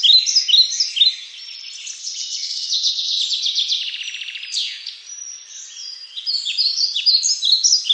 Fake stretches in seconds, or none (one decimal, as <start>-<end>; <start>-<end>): 2.0-3.2